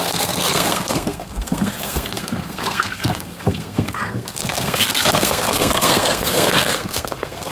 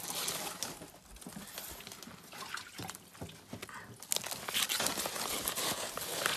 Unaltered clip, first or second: second